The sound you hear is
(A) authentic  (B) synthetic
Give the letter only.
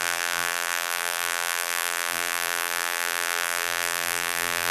B